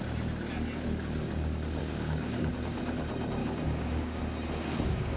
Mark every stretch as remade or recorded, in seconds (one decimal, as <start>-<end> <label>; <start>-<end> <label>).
0.0-1.8 recorded; 1.8-2.5 remade; 2.5-3.4 recorded; 3.4-4.2 remade; 4.2-5.2 recorded